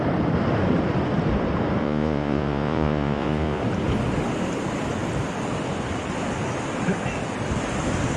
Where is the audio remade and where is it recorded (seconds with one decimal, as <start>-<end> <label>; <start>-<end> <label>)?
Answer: 0.0-1.8 recorded; 1.8-3.6 remade; 3.6-8.2 recorded